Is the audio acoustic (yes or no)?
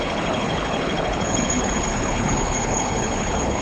no